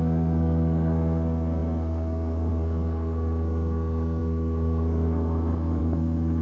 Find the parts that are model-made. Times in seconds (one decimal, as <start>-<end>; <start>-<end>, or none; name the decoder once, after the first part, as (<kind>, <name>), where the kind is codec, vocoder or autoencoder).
0.0-6.4 (codec, SNAC)